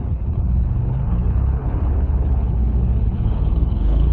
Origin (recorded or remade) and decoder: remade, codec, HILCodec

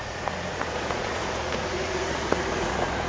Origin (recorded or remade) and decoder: remade, vocoder, Vocos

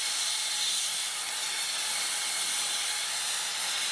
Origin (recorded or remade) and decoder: recorded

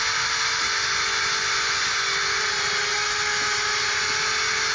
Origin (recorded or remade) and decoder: recorded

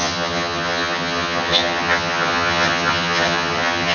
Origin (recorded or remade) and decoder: remade, vocoder, HiFi-GAN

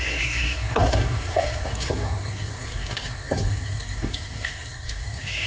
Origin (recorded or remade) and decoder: remade, codec, SNAC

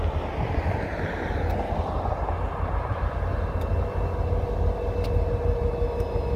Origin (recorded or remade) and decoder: recorded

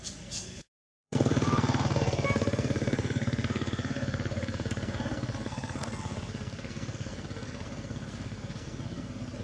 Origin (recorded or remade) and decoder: remade, codec, SNAC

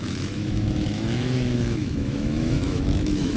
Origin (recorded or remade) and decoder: remade, autoencoder, DAC-VAE